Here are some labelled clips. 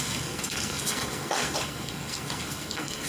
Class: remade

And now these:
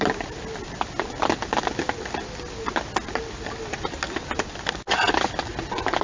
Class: recorded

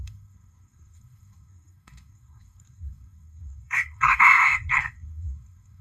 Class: remade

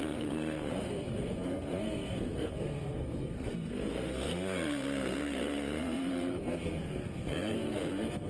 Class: remade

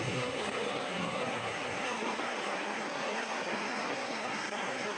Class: remade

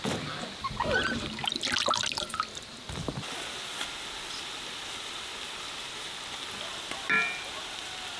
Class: recorded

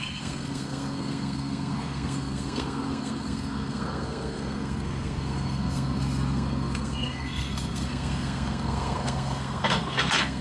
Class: remade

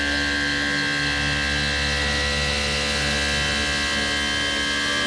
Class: recorded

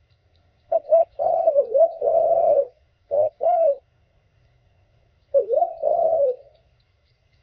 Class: remade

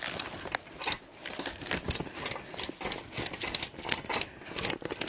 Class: recorded